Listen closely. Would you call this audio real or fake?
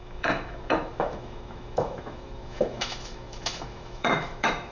fake